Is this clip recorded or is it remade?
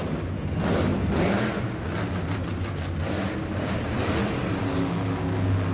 recorded